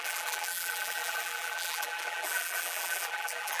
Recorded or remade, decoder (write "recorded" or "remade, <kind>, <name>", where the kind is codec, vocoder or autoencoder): remade, vocoder, BigVGAN v2